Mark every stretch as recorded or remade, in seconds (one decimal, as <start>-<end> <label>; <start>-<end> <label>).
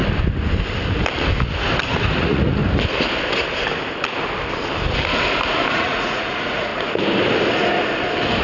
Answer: 0.0-2.2 recorded; 2.2-2.6 remade; 2.6-5.7 recorded; 5.7-6.7 remade; 6.7-8.4 recorded